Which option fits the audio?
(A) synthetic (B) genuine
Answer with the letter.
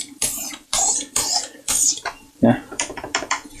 A